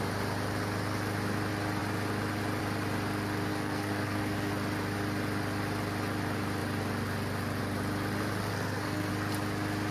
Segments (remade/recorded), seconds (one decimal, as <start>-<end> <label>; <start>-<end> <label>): 0.0-3.5 recorded; 3.5-4.5 remade; 4.5-8.5 recorded; 8.5-9.1 remade; 9.1-9.9 recorded